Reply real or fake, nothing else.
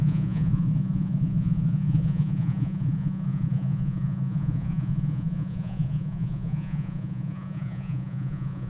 fake